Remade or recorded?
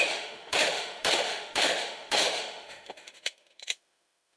remade